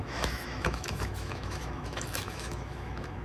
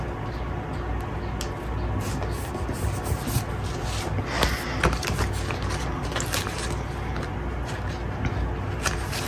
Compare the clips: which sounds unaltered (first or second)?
second